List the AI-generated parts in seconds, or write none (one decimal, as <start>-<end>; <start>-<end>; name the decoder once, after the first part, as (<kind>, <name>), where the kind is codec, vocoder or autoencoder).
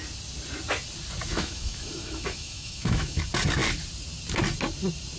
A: 1.3-3.2 (autoencoder, DAC-VAE)